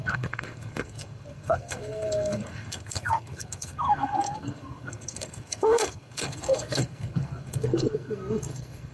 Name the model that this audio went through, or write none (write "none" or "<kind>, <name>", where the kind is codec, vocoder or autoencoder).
codec, SNAC